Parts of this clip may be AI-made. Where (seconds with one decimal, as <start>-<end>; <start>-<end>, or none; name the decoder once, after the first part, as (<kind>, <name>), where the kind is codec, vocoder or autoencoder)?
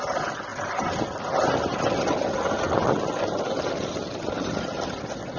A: none